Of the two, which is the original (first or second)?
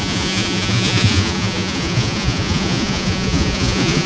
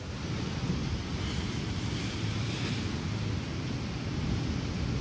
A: second